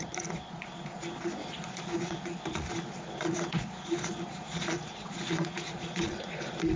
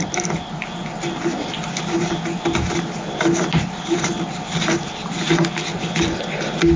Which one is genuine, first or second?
second